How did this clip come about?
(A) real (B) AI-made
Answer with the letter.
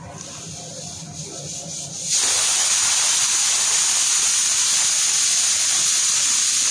A